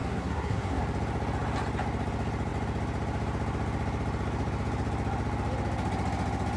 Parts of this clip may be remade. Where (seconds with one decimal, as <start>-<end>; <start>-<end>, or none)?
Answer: 0.0-0.8